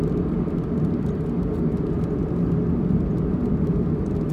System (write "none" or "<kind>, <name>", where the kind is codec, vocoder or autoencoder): none